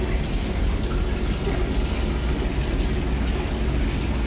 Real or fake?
real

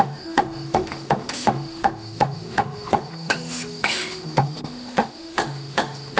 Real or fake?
fake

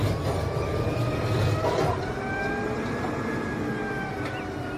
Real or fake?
real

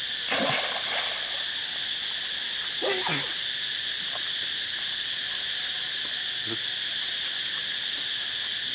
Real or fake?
real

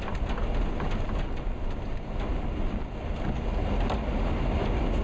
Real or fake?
real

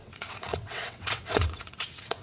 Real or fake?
fake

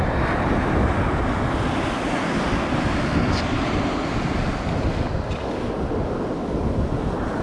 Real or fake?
real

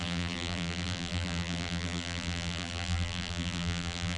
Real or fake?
fake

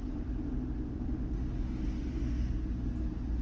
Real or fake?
real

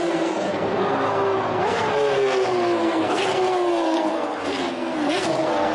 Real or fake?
fake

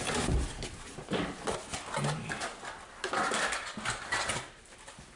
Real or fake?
real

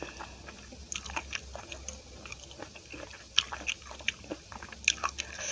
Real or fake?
real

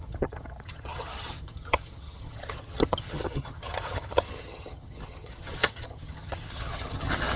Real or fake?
fake